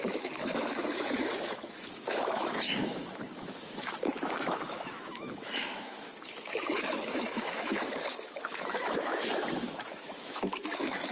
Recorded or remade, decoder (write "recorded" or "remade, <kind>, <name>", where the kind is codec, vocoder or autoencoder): remade, autoencoder, DAC-VAE